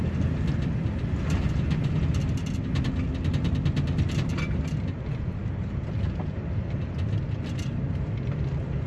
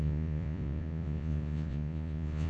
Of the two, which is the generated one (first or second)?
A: second